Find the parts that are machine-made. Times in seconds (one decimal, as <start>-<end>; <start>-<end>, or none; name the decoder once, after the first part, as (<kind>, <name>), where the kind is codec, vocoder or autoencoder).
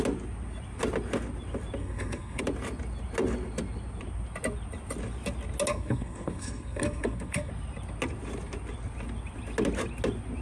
1.8-2.4 (codec, SNAC); 5.7-7.5